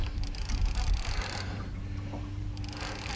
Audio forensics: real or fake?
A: real